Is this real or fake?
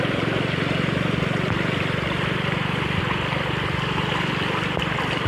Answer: fake